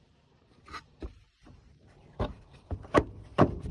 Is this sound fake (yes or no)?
no